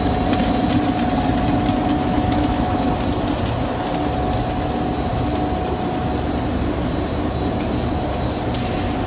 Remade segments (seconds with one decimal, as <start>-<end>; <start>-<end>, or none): 2.0-2.9